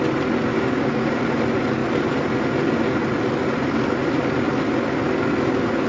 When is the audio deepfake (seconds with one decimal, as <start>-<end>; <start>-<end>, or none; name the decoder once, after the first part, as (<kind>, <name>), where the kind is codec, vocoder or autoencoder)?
0.5-1.2 (codec, DAC)